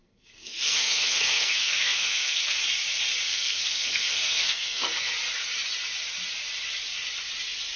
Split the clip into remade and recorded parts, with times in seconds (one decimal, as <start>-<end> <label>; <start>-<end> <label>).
0.0-2.6 remade; 2.6-3.3 recorded; 3.3-5.1 remade; 5.1-7.8 recorded